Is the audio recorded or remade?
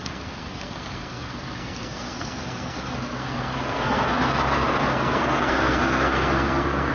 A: remade